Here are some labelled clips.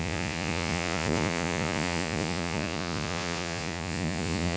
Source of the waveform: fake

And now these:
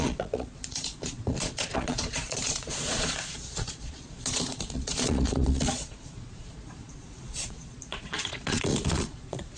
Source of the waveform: fake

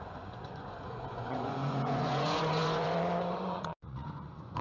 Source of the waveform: fake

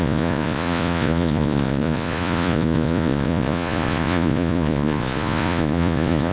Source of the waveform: fake